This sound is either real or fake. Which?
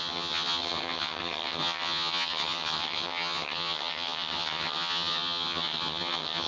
fake